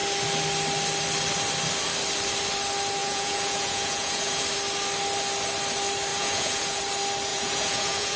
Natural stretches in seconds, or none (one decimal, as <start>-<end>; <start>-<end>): 0.0-3.0; 4.4-6.1; 6.8-7.3

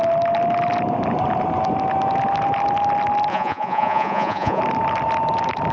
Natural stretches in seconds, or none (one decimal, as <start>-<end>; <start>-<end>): 0.0-3.3; 4.6-5.7

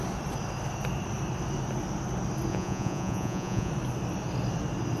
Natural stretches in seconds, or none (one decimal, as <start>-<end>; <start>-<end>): 0.0-2.5; 3.7-5.0

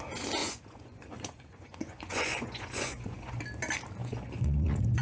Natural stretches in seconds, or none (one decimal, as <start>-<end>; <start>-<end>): 0.0-0.4; 3.4-4.0

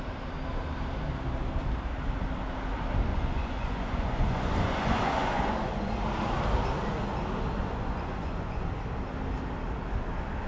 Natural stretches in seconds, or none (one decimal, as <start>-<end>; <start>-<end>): 0.0-3.1; 5.9-7.6; 8.6-10.5